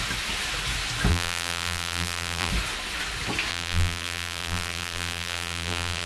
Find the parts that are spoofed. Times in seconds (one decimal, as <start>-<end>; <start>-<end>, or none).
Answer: 1.1-2.5; 3.5-6.1